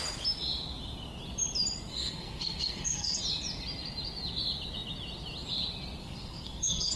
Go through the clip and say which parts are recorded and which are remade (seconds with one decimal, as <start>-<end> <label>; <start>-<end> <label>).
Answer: 0.0-1.9 recorded; 1.9-3.2 remade; 3.2-6.0 recorded; 6.0-7.0 remade